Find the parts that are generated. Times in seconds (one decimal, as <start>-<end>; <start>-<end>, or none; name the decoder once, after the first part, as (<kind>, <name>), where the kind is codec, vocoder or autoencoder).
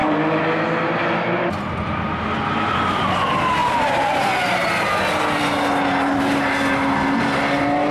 3.6-4.3 (vocoder, BigVGAN v2)